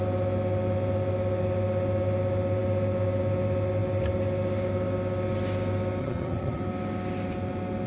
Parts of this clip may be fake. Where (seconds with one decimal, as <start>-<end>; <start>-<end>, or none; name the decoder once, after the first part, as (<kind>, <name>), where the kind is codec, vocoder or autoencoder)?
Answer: 6.0-6.6 (vocoder, HiFi-GAN)